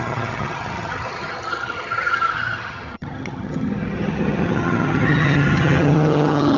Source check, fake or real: fake